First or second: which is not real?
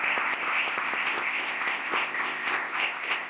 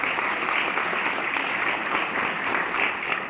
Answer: first